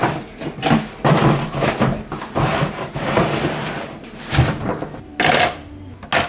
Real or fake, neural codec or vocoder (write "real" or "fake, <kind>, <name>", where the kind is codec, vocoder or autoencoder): real